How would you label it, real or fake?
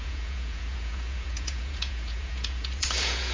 fake